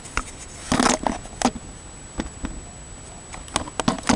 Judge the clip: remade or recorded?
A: recorded